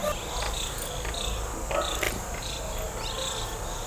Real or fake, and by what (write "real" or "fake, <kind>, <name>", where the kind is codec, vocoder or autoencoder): real